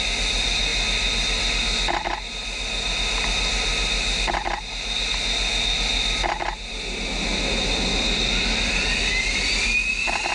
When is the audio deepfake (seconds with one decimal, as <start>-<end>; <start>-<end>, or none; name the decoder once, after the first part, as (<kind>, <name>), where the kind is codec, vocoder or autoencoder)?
none